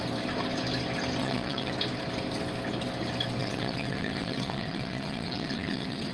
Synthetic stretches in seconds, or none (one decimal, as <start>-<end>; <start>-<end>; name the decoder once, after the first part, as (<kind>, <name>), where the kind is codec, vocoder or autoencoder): 1.2-1.7 (vocoder, WaveNeXt); 3.4-6.1